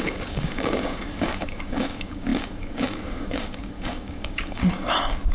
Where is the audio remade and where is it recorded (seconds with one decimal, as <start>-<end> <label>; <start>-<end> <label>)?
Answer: 0.0-5.3 remade